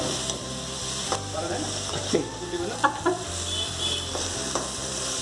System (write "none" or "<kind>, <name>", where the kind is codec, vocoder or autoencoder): vocoder, BigVGAN v2